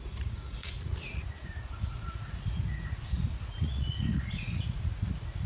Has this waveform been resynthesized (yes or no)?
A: yes